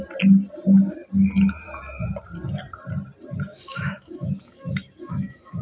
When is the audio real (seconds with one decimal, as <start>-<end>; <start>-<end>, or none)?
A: 0.0-3.5